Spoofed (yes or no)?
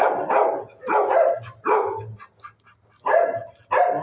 no